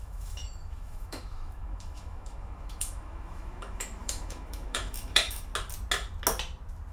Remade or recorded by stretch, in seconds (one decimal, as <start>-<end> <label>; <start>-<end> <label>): 0.0-5.5 remade; 5.5-6.9 recorded